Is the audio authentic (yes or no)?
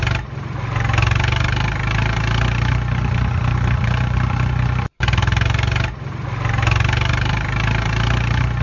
yes